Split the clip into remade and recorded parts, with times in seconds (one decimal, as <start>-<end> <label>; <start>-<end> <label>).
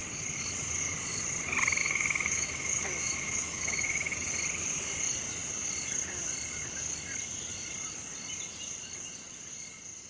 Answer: 0.0-1.8 recorded; 1.8-4.3 remade; 4.3-10.1 recorded